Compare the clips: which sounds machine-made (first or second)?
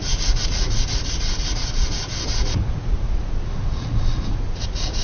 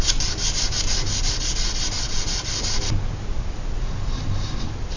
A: first